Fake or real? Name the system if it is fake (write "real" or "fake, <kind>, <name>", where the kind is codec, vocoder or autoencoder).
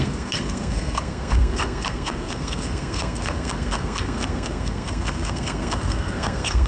fake, codec, SNAC